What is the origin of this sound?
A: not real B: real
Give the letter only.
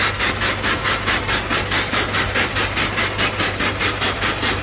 B